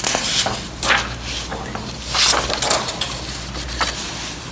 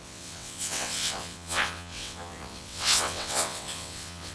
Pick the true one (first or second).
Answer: first